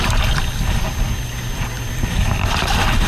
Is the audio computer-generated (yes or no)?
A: no